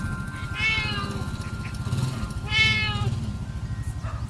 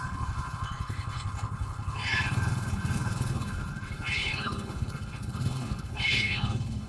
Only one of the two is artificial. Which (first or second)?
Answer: second